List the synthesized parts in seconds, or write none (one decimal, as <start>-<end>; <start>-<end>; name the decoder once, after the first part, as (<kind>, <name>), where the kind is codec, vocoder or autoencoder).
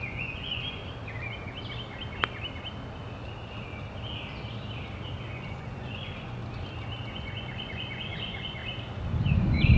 0.0-0.8 (vocoder, Vocos); 5.3-6.4; 7.1-8.6; 9.2-9.8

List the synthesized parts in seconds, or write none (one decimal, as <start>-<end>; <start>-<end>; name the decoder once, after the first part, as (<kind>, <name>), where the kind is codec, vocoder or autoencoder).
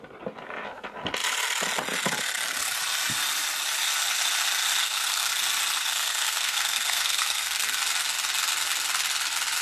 4.8-5.3 (codec, SNAC); 5.8-7.8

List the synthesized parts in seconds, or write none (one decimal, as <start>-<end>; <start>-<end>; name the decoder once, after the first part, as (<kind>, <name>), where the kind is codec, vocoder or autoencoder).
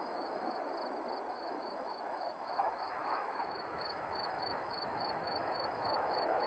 0.0-0.7 (autoencoder, DAC-VAE); 1.3-6.5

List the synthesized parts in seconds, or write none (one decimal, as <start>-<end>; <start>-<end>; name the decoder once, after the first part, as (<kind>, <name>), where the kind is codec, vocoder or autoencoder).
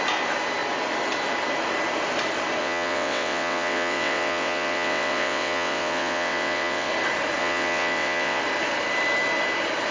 2.6-6.9 (vocoder, WaveNeXt); 7.4-8.4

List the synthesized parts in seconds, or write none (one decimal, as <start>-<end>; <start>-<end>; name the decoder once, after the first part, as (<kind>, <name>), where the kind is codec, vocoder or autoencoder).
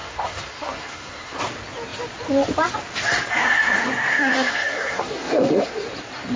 0.0-1.4 (codec, SNAC); 3.4-5.7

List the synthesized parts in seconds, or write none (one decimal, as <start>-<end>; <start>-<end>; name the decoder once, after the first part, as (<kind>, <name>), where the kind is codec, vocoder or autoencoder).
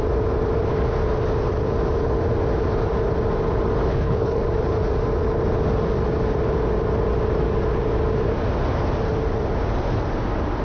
3.9-4.4 (codec, HILCodec)